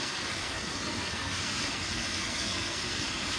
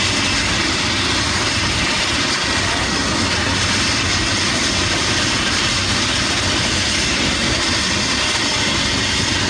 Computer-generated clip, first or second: first